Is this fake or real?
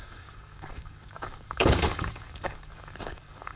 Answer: fake